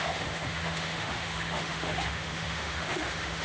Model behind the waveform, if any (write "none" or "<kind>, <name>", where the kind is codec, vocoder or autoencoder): autoencoder, DAC-VAE